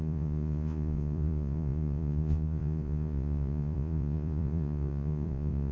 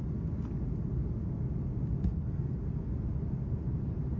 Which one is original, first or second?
second